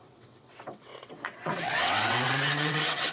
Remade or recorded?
remade